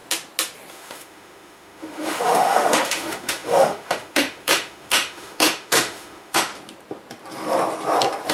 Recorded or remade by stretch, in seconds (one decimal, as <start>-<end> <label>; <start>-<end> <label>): 0.0-0.7 recorded; 0.7-6.5 remade; 6.5-8.3 recorded